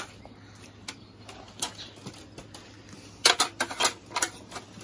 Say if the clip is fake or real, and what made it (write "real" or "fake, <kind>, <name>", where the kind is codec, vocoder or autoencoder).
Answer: real